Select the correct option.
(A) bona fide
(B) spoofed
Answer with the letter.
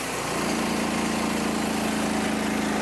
A